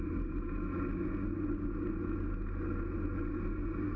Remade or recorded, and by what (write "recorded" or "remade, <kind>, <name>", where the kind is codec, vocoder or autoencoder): recorded